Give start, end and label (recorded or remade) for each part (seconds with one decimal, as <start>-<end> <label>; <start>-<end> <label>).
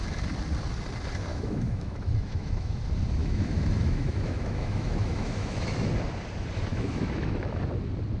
0.0-1.3 recorded; 1.3-2.8 remade; 2.8-3.2 recorded; 3.2-5.9 remade; 5.9-6.7 recorded; 6.7-7.6 remade; 7.6-8.2 recorded